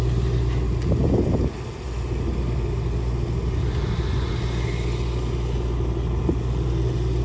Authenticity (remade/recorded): recorded